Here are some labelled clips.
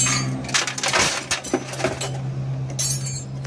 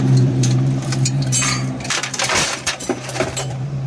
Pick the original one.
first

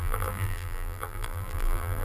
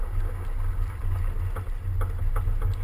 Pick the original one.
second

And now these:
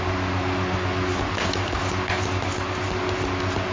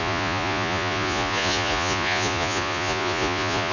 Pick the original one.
first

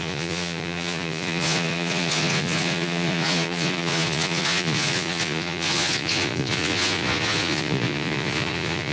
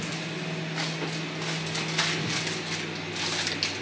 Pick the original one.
second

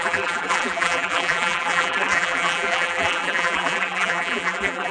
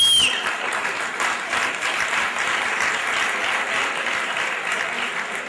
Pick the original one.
second